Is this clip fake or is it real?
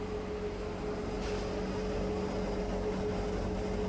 real